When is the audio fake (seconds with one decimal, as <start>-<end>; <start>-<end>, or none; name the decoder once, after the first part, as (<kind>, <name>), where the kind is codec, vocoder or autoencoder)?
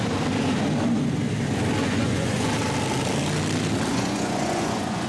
1.8-2.5 (vocoder, Vocos); 3.9-5.1